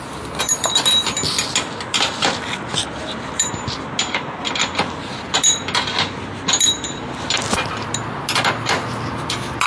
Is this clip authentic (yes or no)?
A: yes